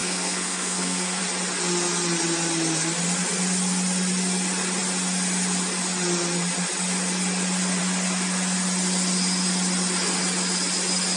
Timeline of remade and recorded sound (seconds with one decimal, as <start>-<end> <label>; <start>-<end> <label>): 0.0-1.2 remade; 1.2-11.2 recorded